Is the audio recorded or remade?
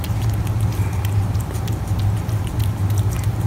recorded